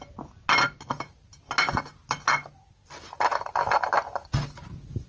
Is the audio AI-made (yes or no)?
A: no